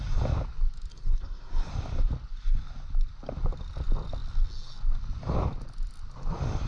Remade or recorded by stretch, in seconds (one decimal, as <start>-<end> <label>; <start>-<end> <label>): 0.0-0.9 recorded; 0.9-1.7 remade; 1.7-6.7 recorded